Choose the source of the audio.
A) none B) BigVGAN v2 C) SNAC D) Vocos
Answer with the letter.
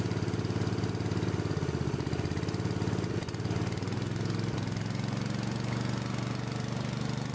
A